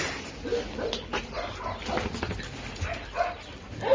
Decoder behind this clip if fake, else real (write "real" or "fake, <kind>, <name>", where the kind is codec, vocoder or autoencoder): real